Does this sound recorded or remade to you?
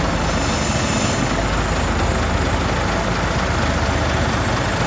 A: recorded